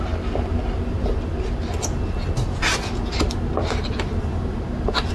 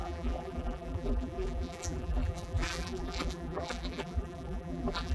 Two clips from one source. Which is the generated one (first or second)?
second